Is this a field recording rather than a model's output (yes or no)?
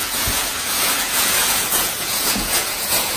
no